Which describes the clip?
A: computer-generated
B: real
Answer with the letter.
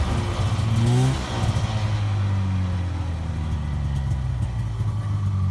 B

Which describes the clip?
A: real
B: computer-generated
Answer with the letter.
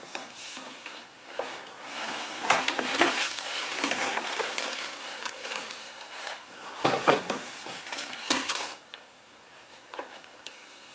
B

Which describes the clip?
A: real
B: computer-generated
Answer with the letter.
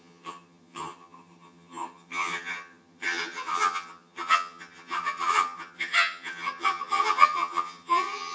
B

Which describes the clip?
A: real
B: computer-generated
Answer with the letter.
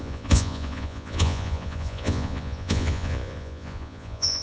B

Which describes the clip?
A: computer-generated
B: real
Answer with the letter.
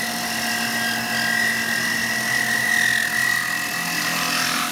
B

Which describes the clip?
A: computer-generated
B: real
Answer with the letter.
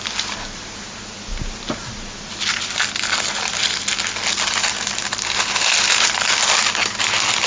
B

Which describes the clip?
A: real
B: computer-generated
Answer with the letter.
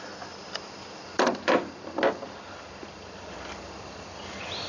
B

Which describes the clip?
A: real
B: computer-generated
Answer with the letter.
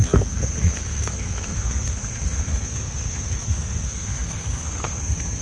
B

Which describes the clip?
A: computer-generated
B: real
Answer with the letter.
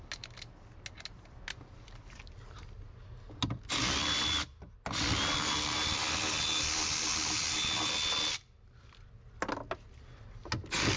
B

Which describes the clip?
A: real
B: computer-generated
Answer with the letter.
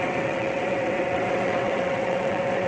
B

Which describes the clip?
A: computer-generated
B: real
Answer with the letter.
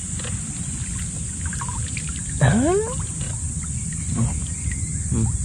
B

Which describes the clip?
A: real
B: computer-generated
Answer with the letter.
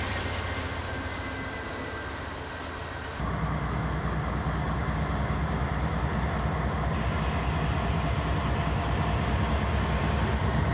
A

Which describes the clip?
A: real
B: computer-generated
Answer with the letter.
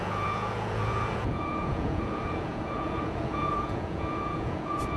B